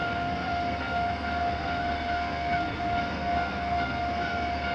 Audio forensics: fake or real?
fake